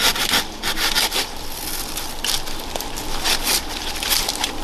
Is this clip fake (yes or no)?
no